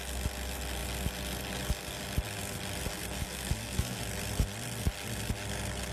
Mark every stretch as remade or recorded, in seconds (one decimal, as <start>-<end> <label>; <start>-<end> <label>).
0.0-3.2 recorded; 3.2-4.0 remade; 4.0-5.9 recorded